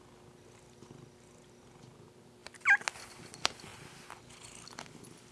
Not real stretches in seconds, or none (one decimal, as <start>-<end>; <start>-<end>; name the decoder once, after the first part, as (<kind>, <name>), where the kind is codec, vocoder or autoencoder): none